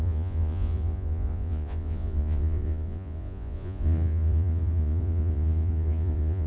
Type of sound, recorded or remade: remade